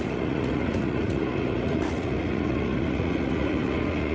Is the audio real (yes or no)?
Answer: no